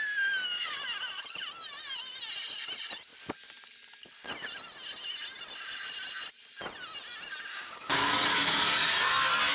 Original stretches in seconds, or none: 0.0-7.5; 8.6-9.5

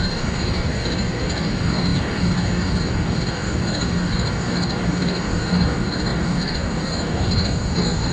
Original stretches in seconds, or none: none